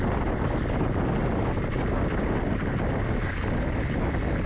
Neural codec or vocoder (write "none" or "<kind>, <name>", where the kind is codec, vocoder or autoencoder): none